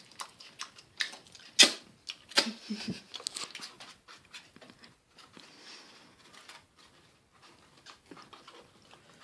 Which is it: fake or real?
real